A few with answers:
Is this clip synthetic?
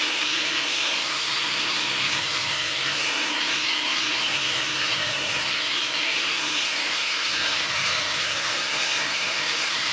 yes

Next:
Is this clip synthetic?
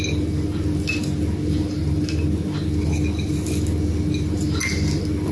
no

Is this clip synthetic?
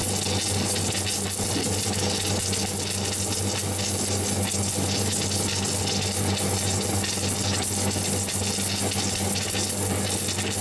no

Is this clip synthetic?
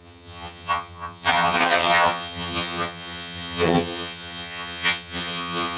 yes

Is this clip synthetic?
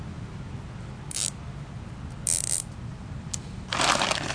no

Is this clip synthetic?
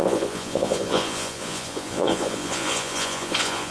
yes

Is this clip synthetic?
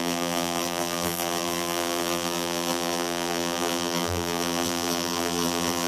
yes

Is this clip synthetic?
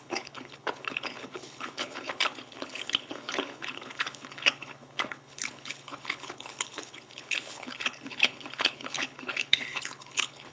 yes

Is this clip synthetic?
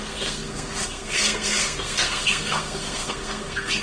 yes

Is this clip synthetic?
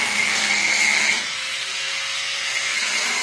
yes